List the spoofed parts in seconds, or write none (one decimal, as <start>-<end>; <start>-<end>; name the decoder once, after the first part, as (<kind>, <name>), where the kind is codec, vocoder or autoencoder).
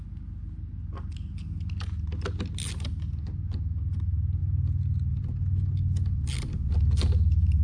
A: none